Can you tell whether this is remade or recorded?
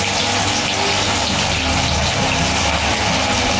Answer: recorded